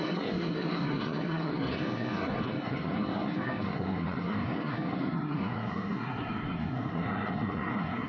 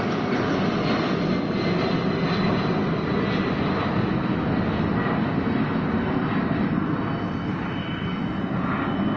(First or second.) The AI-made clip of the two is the first